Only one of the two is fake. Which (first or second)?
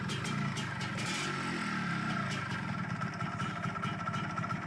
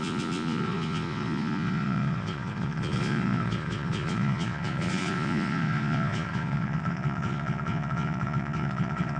second